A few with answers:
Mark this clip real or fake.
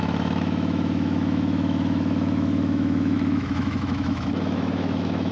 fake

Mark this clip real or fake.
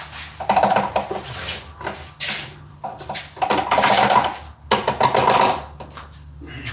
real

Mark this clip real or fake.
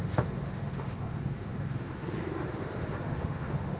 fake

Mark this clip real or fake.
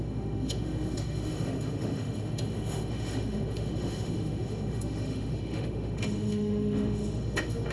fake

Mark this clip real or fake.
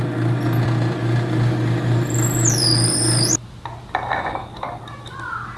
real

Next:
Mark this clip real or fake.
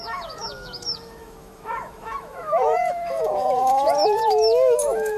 fake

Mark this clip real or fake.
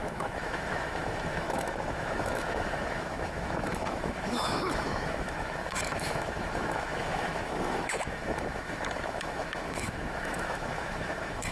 fake